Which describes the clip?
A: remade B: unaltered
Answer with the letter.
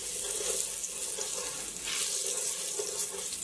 B